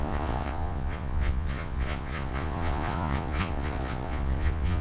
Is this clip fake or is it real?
fake